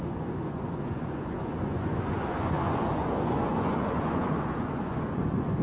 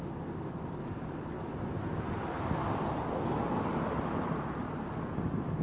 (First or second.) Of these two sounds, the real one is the second